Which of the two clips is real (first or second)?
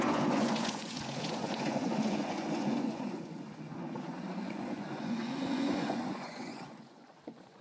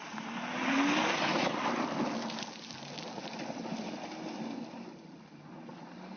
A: second